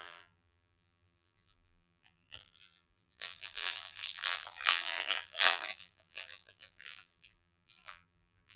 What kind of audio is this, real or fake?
fake